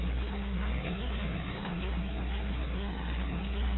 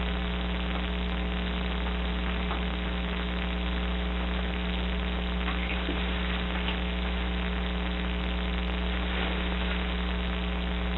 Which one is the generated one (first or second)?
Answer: first